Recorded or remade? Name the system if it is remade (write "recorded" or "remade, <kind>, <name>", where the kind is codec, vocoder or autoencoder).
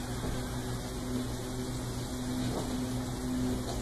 recorded